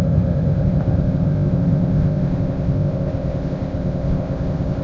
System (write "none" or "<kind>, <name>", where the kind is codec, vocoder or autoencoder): codec, ZipCodec